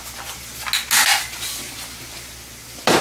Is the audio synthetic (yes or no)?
no